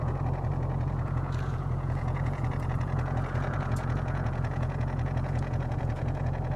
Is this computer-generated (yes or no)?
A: yes